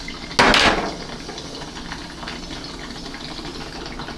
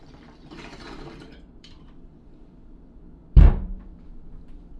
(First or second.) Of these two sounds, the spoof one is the second